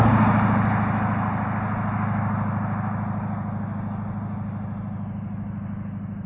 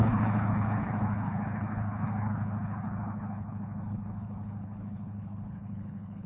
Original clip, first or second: first